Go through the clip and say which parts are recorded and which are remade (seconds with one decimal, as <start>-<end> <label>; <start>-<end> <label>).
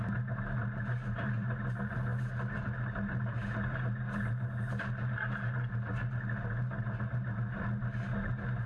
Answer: 0.0-8.7 recorded